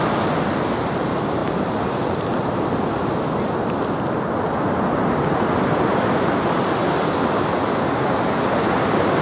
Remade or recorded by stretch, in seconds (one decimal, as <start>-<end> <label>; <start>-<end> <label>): 0.0-9.2 recorded